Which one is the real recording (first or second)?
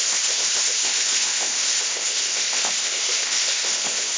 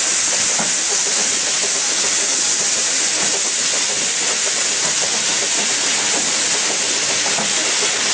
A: second